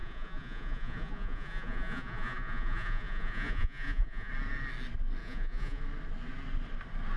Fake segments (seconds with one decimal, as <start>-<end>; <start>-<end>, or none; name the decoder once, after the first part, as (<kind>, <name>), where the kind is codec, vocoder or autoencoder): 0.0-4.3 (vocoder, Vocos); 5.2-5.8